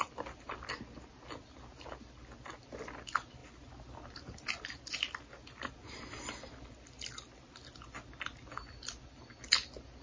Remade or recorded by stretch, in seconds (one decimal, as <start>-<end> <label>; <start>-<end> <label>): 0.0-10.0 recorded